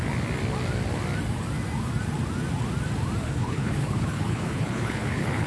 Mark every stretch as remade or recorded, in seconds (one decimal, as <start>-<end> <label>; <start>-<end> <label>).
0.0-3.2 recorded; 3.2-5.5 remade

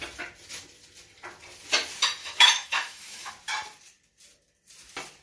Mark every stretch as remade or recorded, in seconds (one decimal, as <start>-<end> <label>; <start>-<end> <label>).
0.0-2.2 recorded; 2.2-3.3 remade; 3.3-5.2 recorded